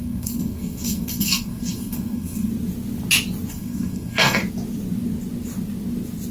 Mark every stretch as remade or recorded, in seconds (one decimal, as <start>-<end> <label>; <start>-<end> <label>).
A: 0.0-2.5 remade; 2.5-3.5 recorded; 3.5-4.4 remade; 4.4-6.3 recorded